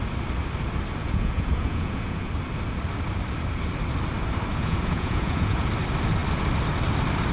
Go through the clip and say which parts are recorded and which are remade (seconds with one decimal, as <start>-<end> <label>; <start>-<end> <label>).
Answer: 0.0-1.0 recorded; 1.0-2.3 remade; 2.3-4.5 recorded; 4.5-5.7 remade; 5.7-7.3 recorded